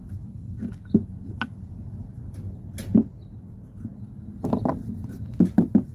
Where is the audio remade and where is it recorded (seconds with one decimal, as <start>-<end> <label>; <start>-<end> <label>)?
0.0-5.9 recorded